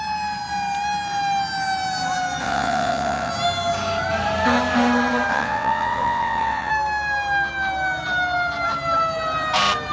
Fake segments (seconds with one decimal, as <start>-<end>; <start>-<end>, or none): 2.4-3.3; 5.3-6.7